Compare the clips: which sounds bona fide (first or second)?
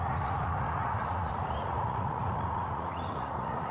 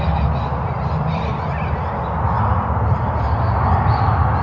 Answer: second